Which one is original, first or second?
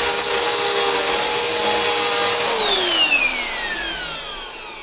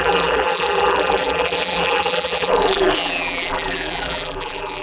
first